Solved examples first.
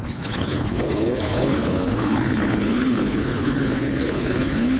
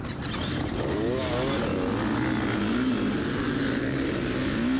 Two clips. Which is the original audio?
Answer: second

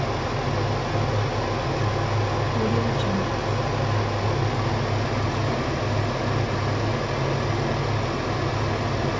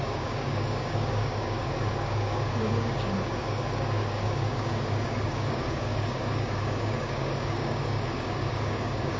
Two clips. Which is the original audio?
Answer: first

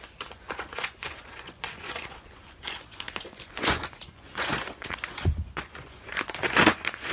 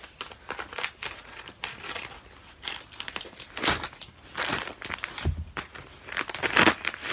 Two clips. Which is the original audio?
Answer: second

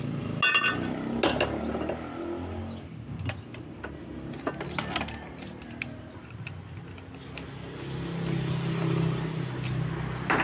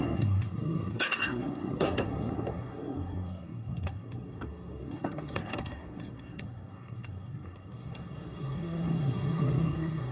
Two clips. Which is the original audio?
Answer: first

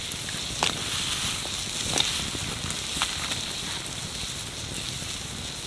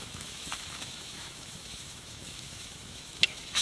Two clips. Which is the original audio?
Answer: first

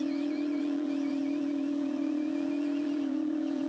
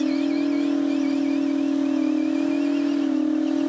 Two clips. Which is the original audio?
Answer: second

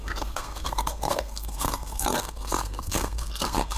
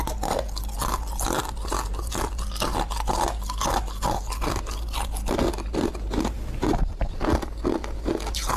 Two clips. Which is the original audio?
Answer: second